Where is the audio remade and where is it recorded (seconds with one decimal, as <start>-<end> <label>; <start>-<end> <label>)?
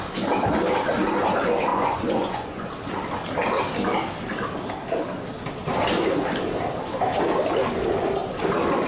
0.0-1.7 recorded; 1.7-2.7 remade; 2.7-8.9 recorded